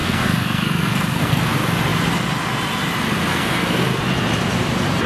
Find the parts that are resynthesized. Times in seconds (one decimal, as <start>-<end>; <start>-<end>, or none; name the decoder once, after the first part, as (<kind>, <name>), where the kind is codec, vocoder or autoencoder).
0.0-1.5 (codec, SNAC); 3.3-4.0